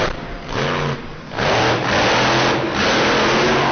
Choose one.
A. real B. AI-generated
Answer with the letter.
A